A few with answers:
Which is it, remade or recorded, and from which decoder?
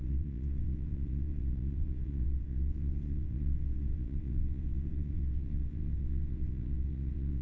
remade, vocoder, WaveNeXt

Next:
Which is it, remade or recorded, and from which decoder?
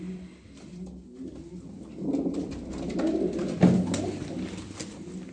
recorded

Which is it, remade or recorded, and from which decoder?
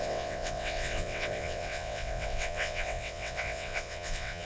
remade, vocoder, WaveNeXt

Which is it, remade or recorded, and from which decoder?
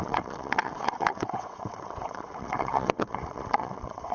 remade, vocoder, WaveNeXt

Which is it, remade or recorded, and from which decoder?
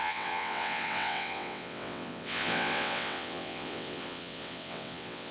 remade, vocoder, WaveNeXt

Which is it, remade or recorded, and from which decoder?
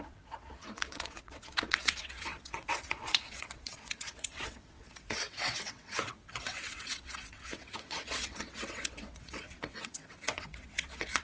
remade, vocoder, WaveNeXt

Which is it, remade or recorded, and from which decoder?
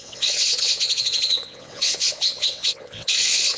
remade, vocoder, WaveNeXt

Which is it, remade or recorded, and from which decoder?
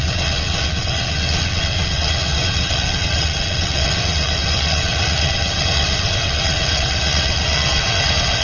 remade, vocoder, WaveNeXt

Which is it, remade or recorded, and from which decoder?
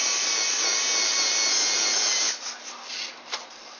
recorded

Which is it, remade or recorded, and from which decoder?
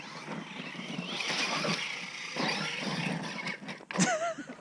recorded